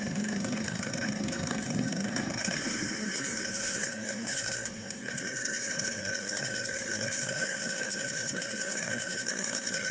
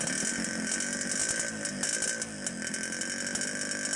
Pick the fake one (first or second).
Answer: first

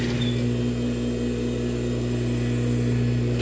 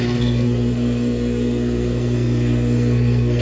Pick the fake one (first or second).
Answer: second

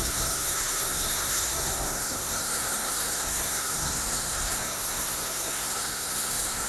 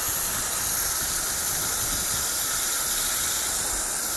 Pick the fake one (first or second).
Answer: first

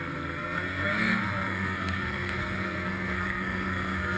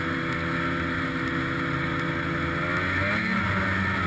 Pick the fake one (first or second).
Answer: first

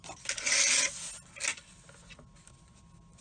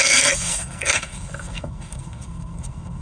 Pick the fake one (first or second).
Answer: second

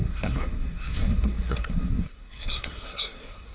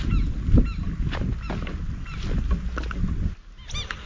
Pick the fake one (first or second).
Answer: first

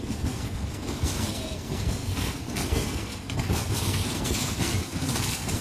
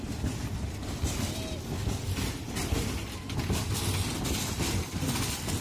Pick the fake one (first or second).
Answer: first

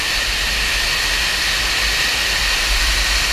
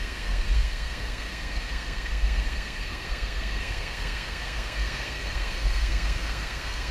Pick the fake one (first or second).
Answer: second